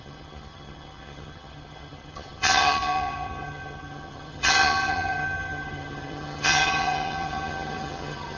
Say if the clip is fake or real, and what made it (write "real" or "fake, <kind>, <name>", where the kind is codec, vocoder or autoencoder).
fake, vocoder, HiFi-GAN